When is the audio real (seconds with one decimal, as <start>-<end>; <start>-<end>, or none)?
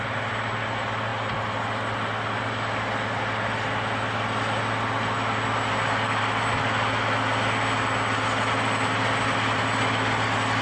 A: 0.0-10.6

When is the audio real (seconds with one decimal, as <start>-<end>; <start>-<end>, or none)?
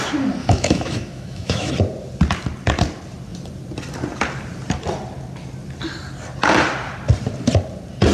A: 0.0-0.4; 1.7-8.1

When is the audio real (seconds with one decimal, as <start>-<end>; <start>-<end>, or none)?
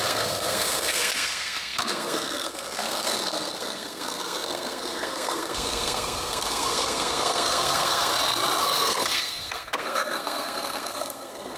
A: 8.1-8.6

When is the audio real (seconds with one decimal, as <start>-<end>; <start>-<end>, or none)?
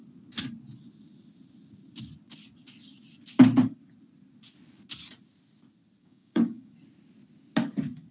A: 0.0-6.0; 6.7-8.1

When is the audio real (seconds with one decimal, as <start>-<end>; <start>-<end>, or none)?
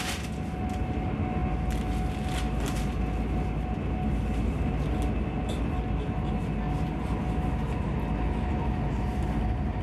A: 0.0-9.8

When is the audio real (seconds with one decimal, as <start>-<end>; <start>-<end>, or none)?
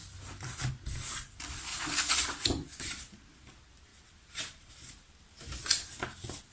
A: 0.7-3.9; 5.4-6.5